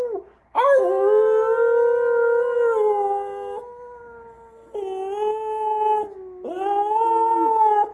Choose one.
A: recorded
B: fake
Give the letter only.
A